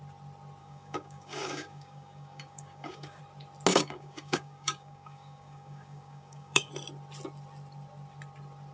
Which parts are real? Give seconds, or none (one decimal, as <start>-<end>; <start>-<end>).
0.0-0.6; 3.2-3.7; 6.7-8.7

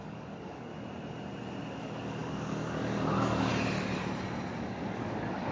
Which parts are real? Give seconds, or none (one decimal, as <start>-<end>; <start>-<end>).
0.7-1.8; 3.5-4.7

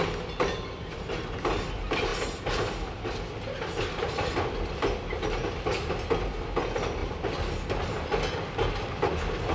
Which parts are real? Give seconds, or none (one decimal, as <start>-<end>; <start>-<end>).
0.0-9.5

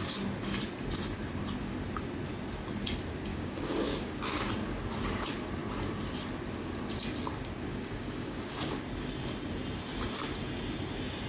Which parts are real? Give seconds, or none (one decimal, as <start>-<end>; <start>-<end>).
0.0-3.3; 4.5-7.7; 8.8-11.3

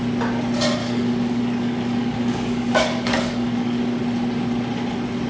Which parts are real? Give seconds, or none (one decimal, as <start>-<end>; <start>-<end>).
0.0-0.8; 4.0-5.3

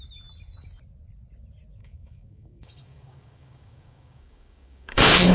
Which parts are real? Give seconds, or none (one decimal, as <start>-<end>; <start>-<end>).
0.0-1.8

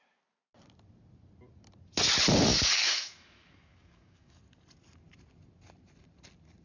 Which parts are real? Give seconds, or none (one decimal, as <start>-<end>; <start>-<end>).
0.0-2.5; 4.4-6.6